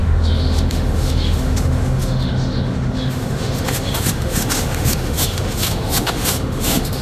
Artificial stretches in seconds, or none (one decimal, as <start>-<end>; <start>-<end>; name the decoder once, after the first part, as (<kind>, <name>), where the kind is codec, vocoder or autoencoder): 0.0-7.0 (autoencoder, DAC-VAE)